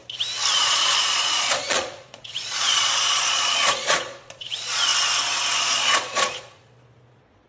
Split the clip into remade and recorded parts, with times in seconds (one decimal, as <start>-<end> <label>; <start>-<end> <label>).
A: 0.0-0.5 recorded; 0.5-4.9 remade; 4.9-5.6 recorded; 5.6-7.5 remade